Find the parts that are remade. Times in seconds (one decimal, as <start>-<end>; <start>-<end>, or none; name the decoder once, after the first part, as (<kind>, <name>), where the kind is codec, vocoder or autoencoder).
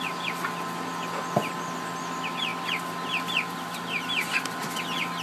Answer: none